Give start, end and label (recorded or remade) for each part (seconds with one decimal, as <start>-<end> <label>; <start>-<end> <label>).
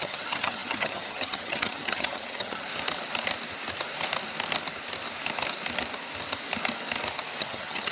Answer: 0.0-2.7 remade; 2.7-7.4 recorded; 7.4-7.9 remade